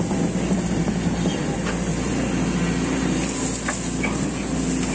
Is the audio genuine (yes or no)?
yes